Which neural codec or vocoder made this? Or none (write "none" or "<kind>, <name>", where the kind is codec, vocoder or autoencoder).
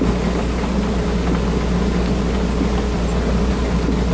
none